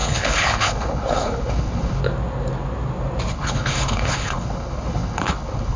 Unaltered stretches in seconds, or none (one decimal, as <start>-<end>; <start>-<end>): 2.0-3.3